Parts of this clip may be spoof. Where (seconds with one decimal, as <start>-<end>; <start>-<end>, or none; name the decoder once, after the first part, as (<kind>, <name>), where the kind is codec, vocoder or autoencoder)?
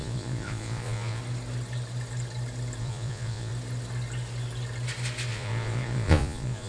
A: 0.0-1.2 (vocoder, Vocos); 2.8-3.5; 5.3-6.7